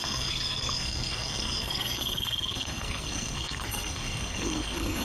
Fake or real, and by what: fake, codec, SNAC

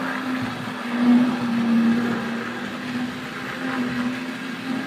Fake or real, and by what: real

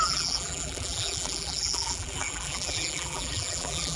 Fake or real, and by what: fake, vocoder, BigVGAN v2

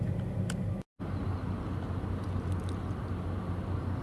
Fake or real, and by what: real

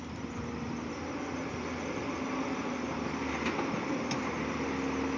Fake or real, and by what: real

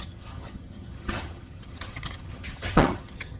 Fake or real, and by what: fake, vocoder, HiFi-GAN